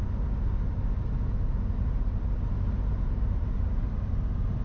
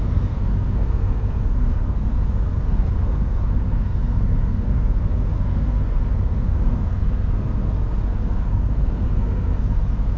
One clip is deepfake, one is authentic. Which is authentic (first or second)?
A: first